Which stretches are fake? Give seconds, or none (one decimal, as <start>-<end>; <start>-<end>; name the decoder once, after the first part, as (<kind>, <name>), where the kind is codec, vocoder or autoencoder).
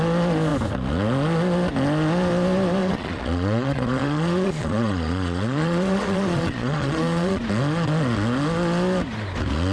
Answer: 2.8-7.4 (vocoder, Vocos)